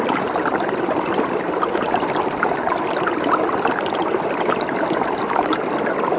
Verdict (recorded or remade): recorded